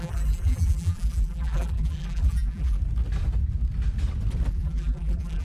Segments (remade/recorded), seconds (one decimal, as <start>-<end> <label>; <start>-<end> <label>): 0.0-2.8 remade; 2.8-4.5 recorded; 4.5-5.4 remade